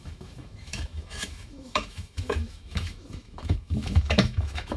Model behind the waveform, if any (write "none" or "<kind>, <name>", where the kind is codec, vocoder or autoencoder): autoencoder, DAC-VAE